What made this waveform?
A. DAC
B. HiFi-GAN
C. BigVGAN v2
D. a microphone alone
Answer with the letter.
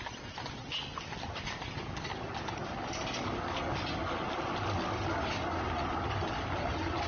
D